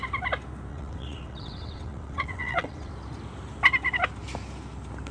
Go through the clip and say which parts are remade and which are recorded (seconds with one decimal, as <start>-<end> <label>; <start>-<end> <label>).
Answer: 0.0-0.7 recorded; 0.7-2.9 remade; 2.9-5.1 recorded